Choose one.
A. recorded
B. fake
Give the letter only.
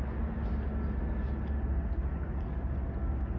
A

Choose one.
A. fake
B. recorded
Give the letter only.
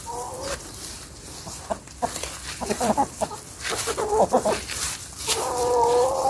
A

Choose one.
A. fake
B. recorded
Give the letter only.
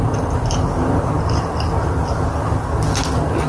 B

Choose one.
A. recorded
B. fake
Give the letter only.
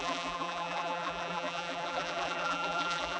B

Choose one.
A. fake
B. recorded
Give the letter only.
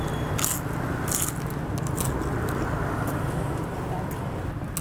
B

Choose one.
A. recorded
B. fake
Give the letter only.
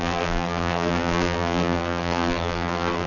B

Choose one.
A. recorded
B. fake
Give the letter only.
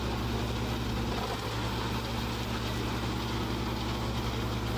A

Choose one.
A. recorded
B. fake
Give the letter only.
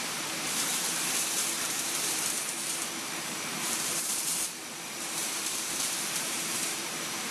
B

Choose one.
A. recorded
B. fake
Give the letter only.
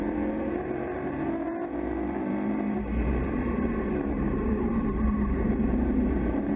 B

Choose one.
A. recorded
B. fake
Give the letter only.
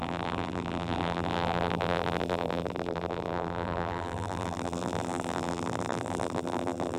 B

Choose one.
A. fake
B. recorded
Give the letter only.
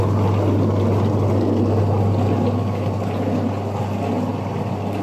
B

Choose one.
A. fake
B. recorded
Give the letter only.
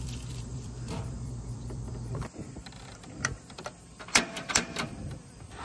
A